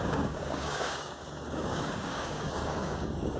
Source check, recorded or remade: remade